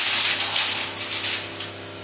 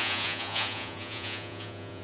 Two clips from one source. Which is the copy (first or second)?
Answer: second